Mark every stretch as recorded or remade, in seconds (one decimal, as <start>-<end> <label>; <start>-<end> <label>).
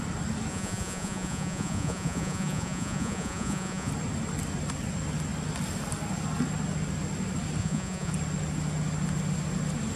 0.0-0.5 recorded; 0.5-3.9 remade; 3.9-7.6 recorded; 7.6-8.1 remade; 8.1-10.0 recorded